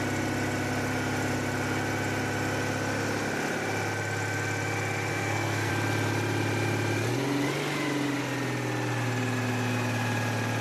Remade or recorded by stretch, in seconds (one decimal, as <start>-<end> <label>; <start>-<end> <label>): 0.0-5.1 recorded; 5.1-5.7 remade; 5.7-10.6 recorded